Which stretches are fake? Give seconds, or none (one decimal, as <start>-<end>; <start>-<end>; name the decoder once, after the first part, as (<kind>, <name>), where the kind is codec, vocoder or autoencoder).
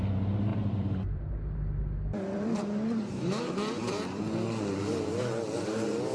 0.5-4.2 (vocoder, BigVGAN v2)